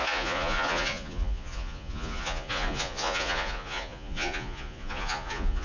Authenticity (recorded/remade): remade